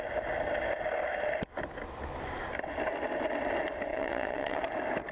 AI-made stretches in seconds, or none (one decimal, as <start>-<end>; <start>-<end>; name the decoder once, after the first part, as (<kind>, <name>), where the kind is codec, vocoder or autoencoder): 3.9-4.6 (vocoder, WaveNeXt)